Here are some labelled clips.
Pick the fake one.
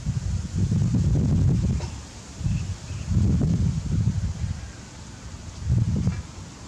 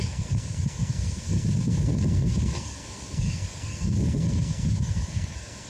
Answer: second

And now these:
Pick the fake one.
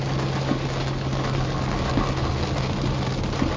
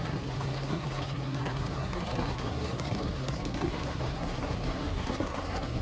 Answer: second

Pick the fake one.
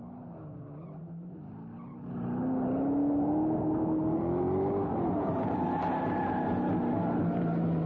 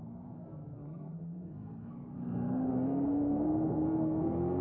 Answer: second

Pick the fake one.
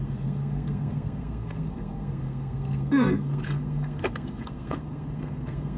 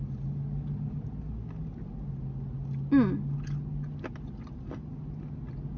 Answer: first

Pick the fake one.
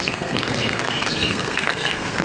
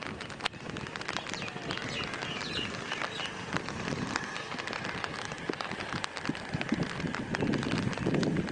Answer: first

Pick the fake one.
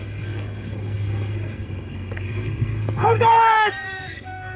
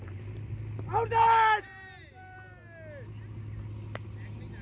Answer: first